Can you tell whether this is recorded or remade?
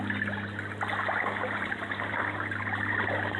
recorded